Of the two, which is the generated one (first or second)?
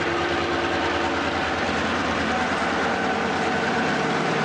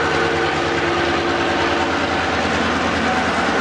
first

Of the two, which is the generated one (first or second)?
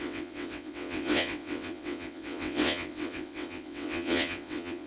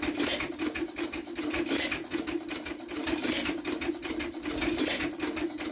first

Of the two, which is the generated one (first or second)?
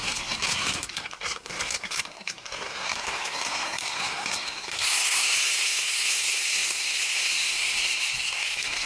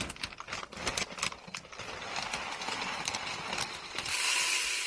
first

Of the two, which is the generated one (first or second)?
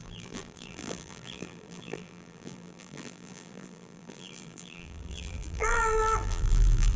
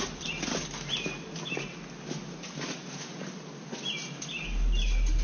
first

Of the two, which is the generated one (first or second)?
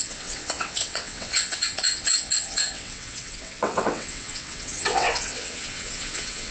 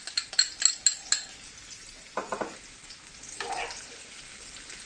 first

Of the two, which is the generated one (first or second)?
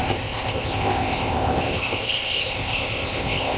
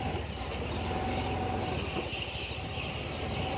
first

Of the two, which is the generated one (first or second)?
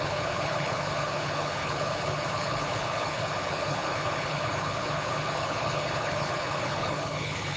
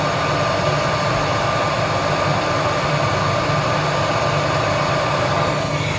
first